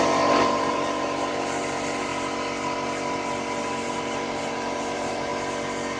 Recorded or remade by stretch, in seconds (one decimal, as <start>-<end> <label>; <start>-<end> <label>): 0.0-2.1 remade; 2.1-3.6 recorded; 3.6-5.3 remade; 5.3-6.0 recorded